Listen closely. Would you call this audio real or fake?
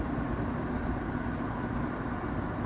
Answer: real